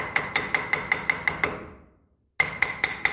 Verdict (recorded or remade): recorded